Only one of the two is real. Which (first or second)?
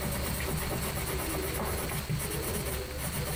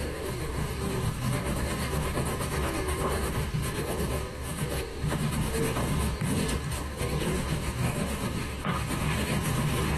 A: first